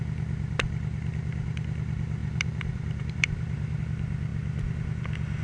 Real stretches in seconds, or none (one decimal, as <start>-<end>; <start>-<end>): 0.0-2.2; 3.8-5.4